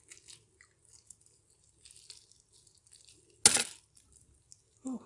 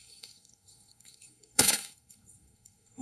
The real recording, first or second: first